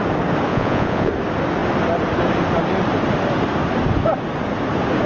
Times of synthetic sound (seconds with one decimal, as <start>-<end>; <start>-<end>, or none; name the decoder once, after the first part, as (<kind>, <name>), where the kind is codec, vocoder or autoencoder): 0.5-1.1 (vocoder, Vocos)